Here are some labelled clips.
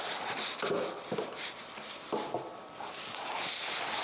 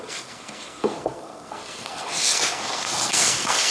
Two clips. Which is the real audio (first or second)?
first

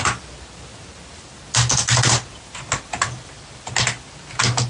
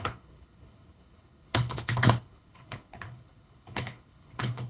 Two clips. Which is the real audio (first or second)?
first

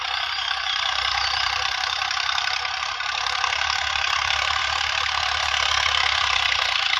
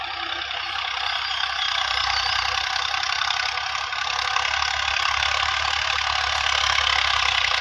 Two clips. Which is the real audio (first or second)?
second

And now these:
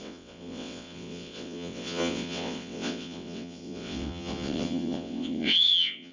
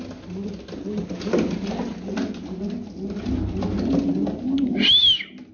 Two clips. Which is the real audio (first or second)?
second